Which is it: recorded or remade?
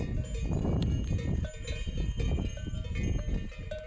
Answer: recorded